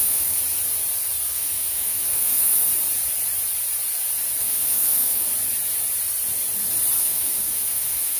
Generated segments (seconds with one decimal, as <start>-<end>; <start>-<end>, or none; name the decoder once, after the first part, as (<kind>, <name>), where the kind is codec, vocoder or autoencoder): 0.0-0.4 (autoencoder, DAC-VAE); 1.3-2.7; 4.4-5.3; 7.0-8.2